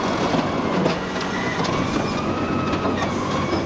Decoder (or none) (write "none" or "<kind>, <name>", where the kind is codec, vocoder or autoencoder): vocoder, Vocos